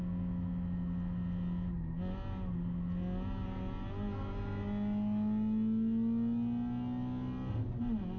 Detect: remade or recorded recorded